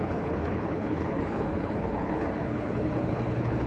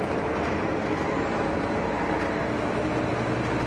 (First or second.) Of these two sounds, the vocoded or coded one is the first